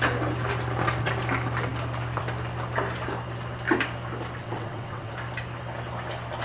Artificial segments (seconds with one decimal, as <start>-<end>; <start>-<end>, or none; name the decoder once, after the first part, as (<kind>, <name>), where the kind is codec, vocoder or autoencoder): 4.4-5.1 (vocoder, WaveNeXt)